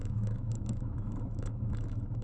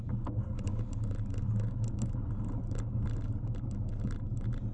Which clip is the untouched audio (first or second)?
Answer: second